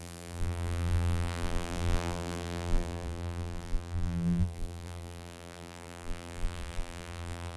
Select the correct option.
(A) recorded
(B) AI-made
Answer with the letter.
B